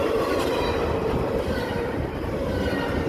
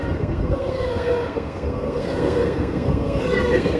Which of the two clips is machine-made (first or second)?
second